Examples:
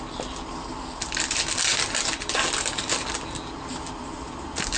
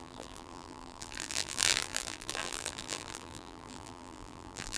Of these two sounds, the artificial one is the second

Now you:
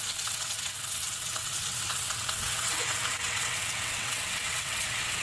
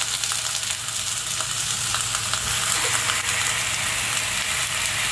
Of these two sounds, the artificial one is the first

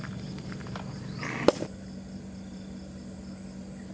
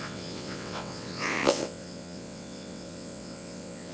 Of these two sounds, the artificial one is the second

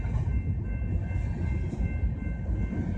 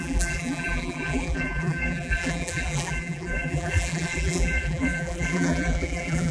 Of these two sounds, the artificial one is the second